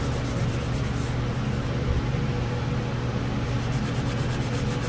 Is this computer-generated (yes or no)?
no